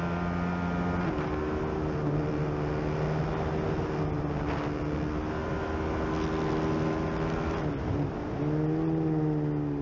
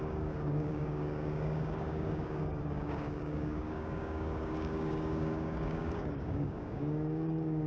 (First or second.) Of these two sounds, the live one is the first